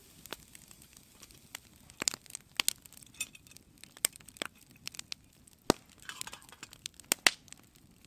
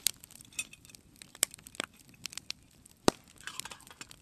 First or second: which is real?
first